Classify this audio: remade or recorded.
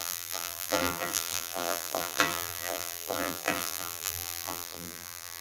remade